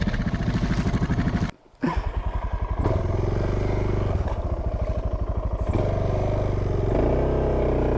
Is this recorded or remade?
recorded